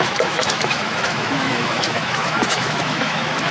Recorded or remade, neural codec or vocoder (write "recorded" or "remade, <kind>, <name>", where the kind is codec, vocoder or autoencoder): remade, autoencoder, DAC-VAE